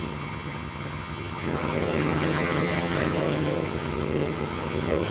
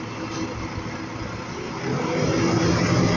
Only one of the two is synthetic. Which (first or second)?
first